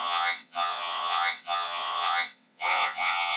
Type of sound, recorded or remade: remade